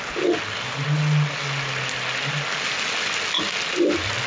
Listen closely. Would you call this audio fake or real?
real